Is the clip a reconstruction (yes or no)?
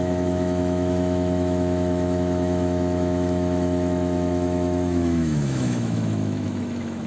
yes